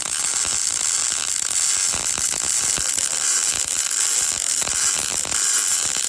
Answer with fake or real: real